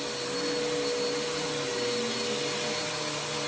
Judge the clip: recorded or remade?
recorded